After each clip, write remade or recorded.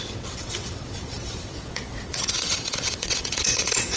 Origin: remade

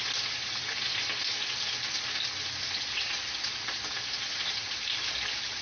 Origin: recorded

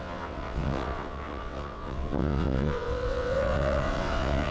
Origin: remade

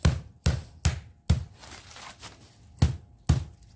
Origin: recorded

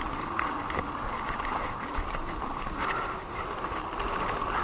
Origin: recorded